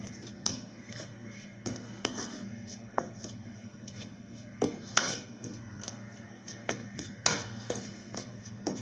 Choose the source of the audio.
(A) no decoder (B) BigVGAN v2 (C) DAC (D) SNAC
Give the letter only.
D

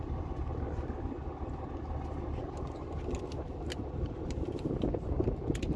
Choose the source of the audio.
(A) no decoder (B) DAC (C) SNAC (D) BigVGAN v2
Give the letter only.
A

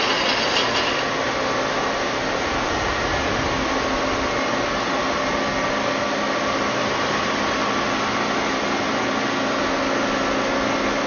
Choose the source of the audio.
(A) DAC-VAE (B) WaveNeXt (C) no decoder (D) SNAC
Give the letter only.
C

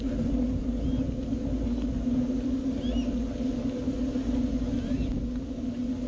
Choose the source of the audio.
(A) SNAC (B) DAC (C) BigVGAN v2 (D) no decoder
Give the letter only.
D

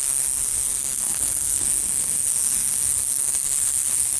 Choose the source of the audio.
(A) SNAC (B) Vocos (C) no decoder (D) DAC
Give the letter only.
A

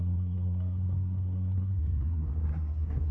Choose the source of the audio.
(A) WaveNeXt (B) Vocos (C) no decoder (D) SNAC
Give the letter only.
D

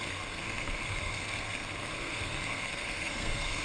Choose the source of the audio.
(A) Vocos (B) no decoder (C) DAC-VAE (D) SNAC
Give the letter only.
D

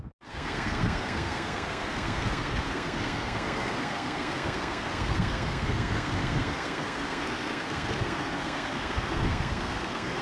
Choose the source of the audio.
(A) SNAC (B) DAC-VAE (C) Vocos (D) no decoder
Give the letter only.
A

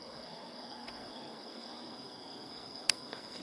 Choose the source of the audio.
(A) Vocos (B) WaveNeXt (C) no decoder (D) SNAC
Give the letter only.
D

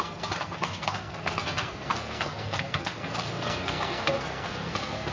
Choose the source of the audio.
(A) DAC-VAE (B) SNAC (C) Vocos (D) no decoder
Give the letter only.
B